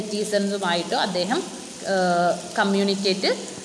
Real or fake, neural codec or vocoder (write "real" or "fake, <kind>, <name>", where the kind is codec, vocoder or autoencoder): real